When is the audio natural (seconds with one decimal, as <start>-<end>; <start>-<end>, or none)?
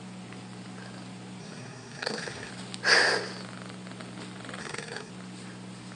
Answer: 0.0-1.4; 2.5-4.6; 5.1-6.0